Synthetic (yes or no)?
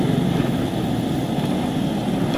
no